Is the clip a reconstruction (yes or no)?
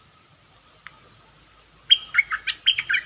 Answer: no